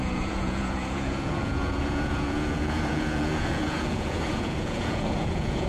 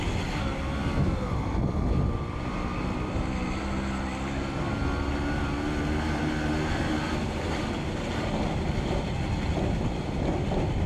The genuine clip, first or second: second